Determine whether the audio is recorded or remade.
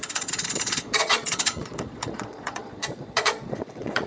remade